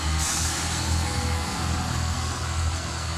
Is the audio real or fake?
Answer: fake